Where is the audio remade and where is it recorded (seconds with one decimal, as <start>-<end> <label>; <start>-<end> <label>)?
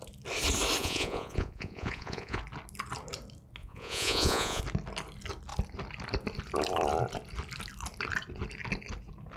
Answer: 0.0-0.8 recorded; 0.8-2.4 remade; 2.4-3.6 recorded; 3.6-4.6 remade; 4.6-9.4 recorded